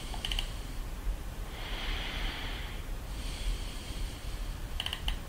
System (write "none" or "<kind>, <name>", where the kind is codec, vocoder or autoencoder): vocoder, BigVGAN v2